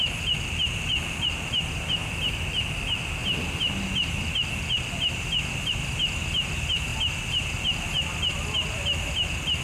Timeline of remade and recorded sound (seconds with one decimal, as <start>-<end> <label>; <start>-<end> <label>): 0.0-9.6 recorded